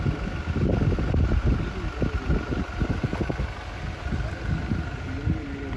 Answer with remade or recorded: recorded